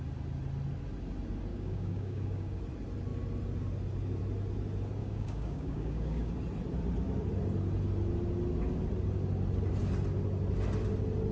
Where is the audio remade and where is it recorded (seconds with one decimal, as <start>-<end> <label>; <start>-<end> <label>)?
0.0-1.5 recorded; 1.5-2.6 remade; 2.6-5.0 recorded; 5.0-6.3 remade; 6.3-11.3 recorded